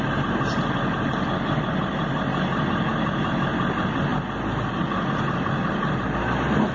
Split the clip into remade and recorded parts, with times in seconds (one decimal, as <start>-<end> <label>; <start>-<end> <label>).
0.0-6.7 recorded